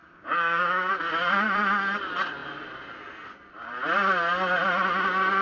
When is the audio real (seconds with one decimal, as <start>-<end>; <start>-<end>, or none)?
0.9-5.4